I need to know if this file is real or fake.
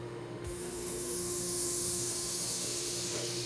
fake